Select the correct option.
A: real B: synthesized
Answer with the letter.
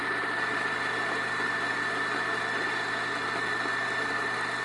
A